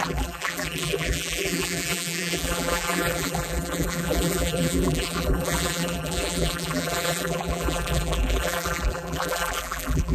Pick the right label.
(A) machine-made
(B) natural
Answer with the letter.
A